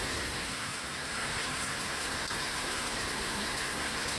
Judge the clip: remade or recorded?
remade